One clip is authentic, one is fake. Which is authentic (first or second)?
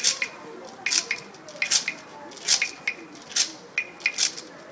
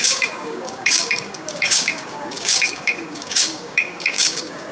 first